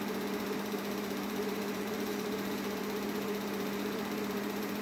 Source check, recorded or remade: remade